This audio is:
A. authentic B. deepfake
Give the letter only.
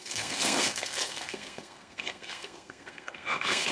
B